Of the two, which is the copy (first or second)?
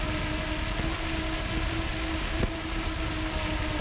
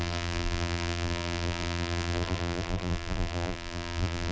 second